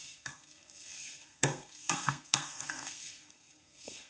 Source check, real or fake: fake